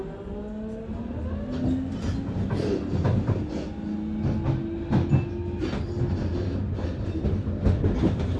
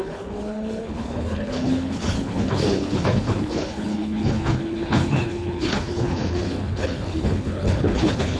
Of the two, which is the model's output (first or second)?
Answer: second